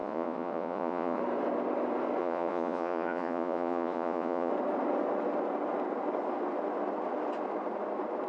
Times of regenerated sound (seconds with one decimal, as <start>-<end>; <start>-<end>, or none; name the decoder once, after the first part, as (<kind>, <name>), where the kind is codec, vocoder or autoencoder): 0.0-1.2 (vocoder, Vocos); 2.2-4.5